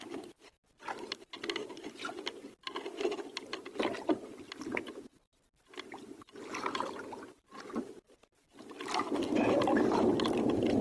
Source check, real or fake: real